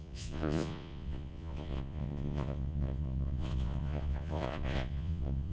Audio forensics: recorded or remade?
remade